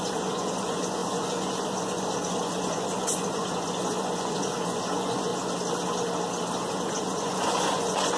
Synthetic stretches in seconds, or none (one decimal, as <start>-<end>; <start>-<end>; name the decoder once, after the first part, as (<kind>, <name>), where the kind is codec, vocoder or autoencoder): 0.0-5.3 (vocoder, Vocos); 6.7-8.2